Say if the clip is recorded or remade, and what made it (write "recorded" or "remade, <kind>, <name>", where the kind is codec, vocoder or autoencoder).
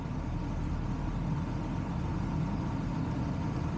recorded